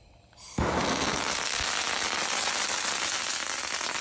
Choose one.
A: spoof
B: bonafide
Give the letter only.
B